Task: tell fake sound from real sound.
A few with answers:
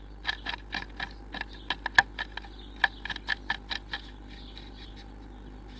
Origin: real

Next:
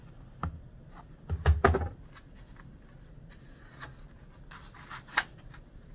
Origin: real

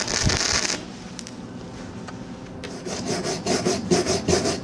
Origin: real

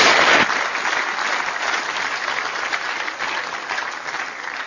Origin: real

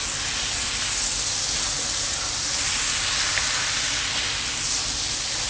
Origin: real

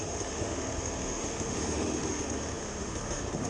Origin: fake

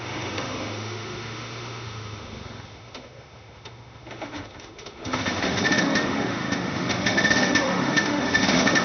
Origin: fake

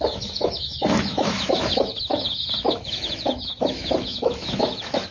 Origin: fake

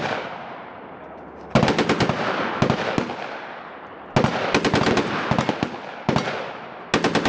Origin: real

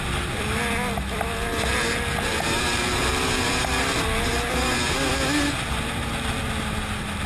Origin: real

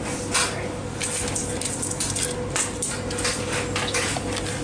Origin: real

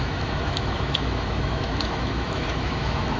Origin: fake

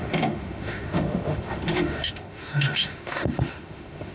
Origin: fake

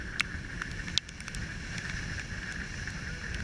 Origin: real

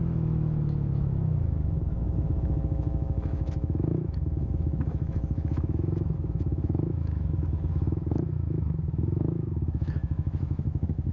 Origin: fake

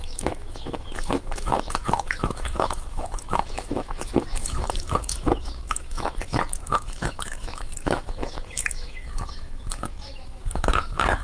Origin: fake